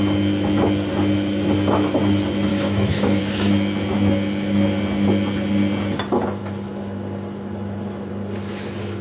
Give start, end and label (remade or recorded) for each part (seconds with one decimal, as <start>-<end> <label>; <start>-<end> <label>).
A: 0.0-2.5 recorded; 2.5-3.2 remade; 3.2-9.0 recorded